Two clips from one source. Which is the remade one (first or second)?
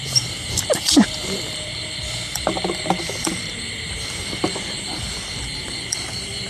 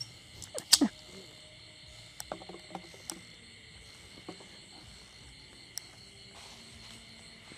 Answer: first